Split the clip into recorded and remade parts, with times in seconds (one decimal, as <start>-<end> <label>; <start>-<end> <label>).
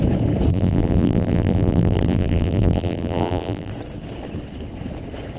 0.0-0.5 recorded; 0.5-3.7 remade; 3.7-5.4 recorded